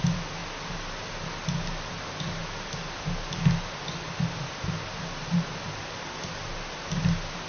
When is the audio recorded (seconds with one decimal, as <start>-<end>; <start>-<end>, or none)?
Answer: 0.0-7.5